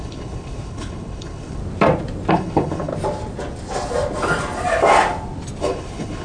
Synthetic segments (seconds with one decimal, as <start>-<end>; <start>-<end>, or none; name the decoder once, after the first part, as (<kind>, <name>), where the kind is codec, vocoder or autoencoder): 0.0-1.6 (codec, HILCodec); 2.3-2.9; 5.6-6.2